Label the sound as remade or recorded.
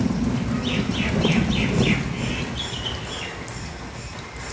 recorded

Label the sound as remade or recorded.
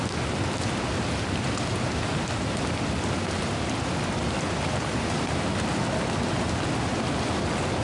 recorded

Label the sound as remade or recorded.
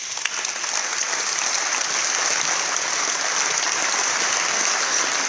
recorded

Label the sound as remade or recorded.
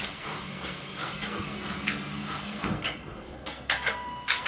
remade